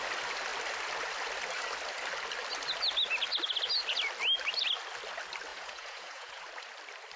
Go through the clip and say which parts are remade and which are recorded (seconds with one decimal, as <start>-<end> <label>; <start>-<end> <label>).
0.0-5.5 recorded; 5.5-6.4 remade; 6.4-7.2 recorded